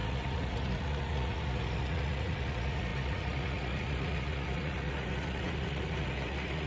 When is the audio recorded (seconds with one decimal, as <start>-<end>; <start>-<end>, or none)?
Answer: none